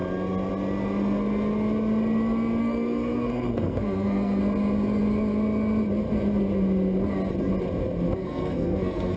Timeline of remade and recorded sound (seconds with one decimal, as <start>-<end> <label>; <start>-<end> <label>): 0.0-2.6 recorded; 2.6-4.4 remade; 4.4-8.2 recorded; 8.2-9.2 remade